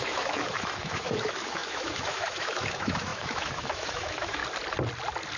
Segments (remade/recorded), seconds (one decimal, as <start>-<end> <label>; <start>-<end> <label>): 0.0-4.4 remade; 4.4-5.4 recorded

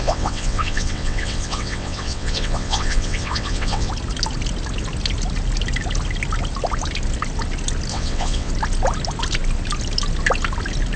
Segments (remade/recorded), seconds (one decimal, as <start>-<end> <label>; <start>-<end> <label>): 0.0-3.9 remade; 3.9-7.9 recorded; 7.9-8.5 remade; 8.5-11.0 recorded

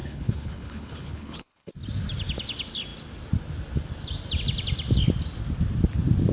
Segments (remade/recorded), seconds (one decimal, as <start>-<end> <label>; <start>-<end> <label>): 0.0-1.7 remade; 1.7-6.3 recorded

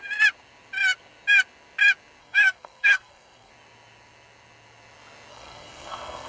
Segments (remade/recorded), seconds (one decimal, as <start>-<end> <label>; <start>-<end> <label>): 0.0-2.2 recorded; 2.2-3.5 remade; 3.5-5.3 recorded; 5.3-6.3 remade